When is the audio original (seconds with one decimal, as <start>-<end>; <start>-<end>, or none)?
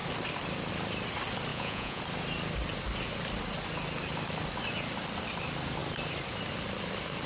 0.0-1.5; 2.0-7.3